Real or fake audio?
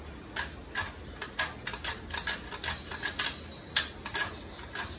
real